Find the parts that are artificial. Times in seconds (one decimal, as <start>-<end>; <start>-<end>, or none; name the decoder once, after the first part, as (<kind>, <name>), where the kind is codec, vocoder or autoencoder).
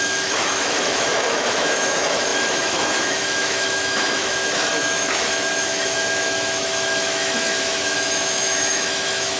0.0-9.4 (autoencoder, DAC-VAE)